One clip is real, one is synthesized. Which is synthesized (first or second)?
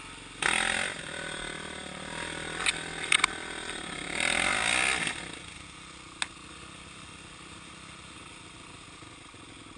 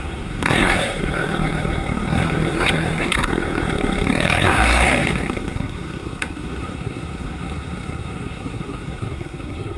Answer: second